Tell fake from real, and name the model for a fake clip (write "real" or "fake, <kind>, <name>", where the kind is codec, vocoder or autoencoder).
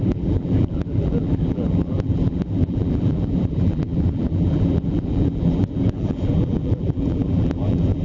fake, vocoder, BigVGAN v2